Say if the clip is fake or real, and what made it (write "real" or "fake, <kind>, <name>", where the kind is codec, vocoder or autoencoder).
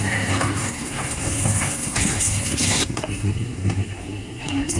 fake, codec, SNAC